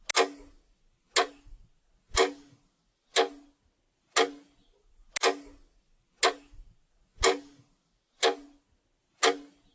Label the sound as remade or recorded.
recorded